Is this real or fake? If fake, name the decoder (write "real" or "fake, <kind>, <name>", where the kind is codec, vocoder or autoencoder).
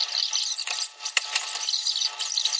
real